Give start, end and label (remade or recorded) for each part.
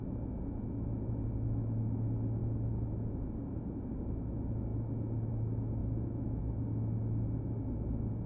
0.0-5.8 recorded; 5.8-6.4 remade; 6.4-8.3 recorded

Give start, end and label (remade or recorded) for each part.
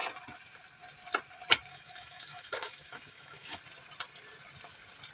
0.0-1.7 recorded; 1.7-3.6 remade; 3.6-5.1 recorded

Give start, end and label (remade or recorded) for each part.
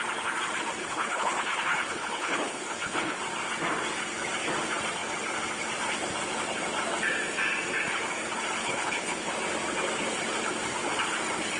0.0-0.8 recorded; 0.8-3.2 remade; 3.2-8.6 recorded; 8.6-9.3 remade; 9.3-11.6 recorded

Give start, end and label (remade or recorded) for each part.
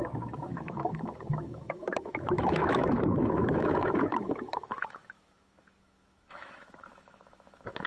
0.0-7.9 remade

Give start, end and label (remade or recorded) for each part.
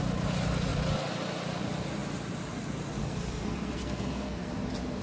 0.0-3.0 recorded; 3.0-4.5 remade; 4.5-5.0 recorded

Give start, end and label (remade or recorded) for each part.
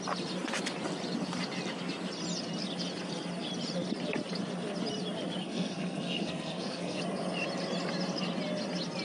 0.0-5.4 recorded; 5.4-7.0 remade; 7.0-9.0 recorded